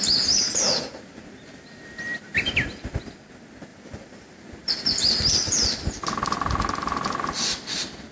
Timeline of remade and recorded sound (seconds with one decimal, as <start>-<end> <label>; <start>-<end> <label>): 0.0-0.6 recorded; 0.6-3.0 remade; 3.0-3.7 recorded; 3.7-6.2 remade; 6.2-8.1 recorded